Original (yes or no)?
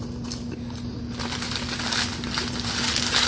yes